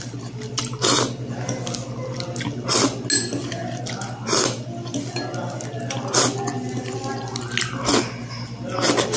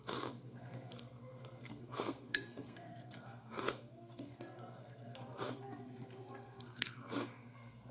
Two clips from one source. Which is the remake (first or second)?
second